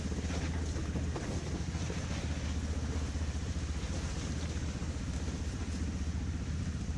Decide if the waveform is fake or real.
real